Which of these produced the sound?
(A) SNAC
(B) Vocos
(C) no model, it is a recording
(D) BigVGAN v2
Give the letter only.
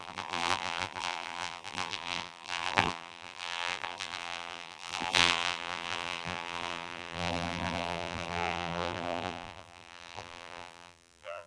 D